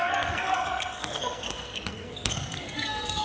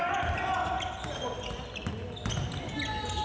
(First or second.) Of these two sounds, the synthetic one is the first